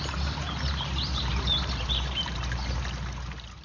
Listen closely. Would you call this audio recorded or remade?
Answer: recorded